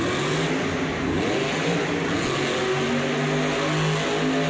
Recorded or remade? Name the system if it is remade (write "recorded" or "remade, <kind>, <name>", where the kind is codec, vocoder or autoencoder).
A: recorded